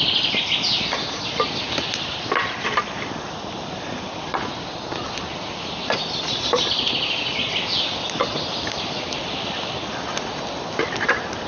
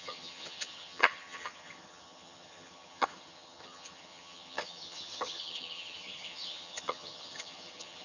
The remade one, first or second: second